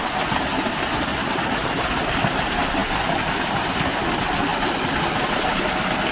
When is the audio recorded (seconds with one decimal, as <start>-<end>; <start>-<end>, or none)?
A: 0.0-6.1